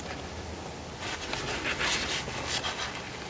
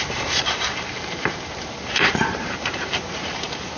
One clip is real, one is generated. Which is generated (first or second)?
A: second